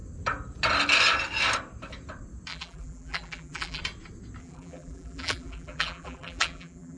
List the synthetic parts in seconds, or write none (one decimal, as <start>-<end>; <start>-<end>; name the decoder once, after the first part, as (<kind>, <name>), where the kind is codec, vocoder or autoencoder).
2.5-3.8 (vocoder, BigVGAN v2); 4.4-7.0